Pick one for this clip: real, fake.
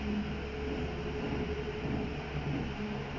real